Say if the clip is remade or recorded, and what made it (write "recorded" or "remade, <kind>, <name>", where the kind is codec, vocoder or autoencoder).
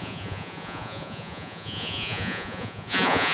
remade, vocoder, Vocos